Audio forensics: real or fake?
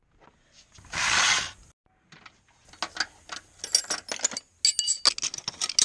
real